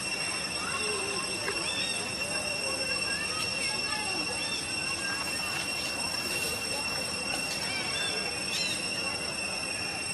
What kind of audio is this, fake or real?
real